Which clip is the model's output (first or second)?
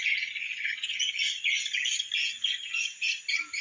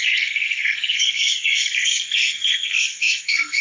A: second